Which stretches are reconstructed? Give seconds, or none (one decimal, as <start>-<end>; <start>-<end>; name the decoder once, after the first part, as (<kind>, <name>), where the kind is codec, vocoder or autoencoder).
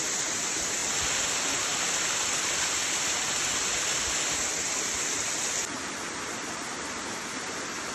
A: none